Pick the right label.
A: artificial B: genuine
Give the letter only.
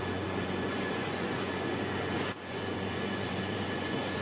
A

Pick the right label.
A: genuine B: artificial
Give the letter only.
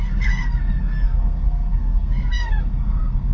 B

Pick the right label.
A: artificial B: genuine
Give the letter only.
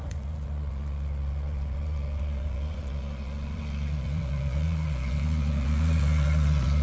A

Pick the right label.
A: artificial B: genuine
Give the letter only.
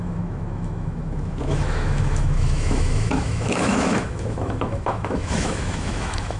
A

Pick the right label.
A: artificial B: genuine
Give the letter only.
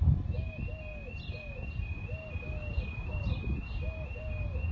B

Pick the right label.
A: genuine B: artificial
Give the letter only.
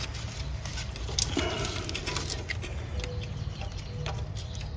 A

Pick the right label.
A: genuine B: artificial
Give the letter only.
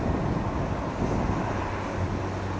A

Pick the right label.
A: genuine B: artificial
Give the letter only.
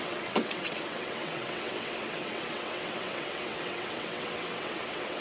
B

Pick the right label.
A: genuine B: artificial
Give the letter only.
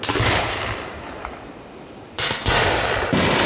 A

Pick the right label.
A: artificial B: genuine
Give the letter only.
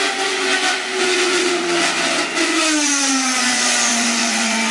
A